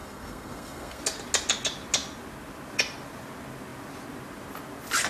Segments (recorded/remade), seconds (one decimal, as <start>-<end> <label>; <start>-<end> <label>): 0.0-1.0 remade; 1.0-5.1 recorded